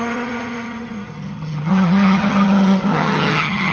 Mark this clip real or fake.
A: fake